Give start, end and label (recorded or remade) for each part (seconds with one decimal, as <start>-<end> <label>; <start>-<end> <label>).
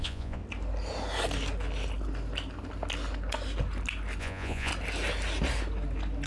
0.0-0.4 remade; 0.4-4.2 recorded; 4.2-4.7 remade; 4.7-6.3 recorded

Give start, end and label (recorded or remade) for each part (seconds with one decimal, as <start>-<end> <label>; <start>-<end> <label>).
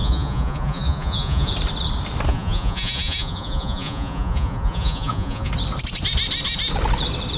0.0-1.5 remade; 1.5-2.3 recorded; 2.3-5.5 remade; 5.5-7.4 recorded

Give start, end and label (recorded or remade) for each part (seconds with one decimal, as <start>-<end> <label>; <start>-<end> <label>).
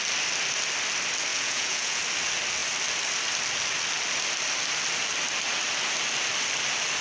0.0-1.3 recorded; 1.3-2.0 remade; 2.0-7.0 recorded